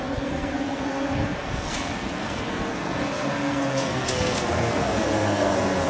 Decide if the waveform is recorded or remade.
remade